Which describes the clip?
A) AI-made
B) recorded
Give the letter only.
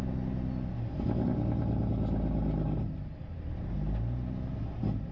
B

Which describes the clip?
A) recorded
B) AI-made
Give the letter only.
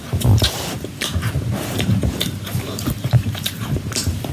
B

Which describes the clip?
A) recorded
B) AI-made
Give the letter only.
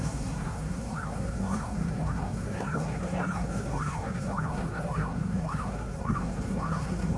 B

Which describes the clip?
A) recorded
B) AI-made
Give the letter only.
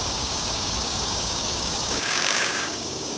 B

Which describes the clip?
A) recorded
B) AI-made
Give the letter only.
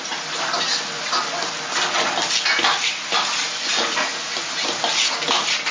A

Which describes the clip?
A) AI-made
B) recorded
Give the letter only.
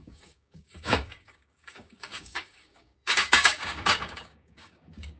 A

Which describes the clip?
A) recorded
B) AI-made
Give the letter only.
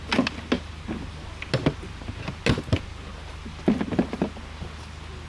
A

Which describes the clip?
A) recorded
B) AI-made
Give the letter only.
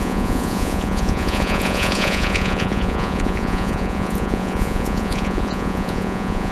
B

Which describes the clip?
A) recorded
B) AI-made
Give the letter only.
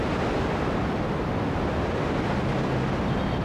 A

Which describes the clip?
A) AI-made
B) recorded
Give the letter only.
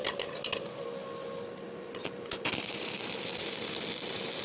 B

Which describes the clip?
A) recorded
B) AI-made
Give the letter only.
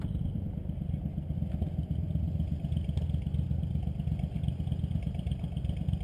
A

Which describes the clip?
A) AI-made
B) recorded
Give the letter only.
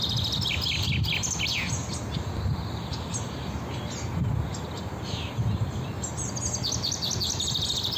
B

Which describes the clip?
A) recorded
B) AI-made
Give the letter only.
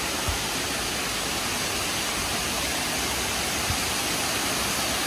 A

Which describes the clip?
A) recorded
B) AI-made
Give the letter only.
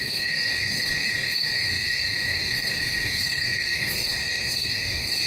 B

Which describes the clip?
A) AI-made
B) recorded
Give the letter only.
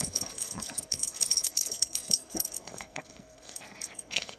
A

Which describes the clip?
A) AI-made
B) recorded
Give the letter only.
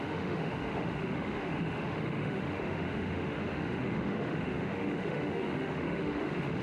A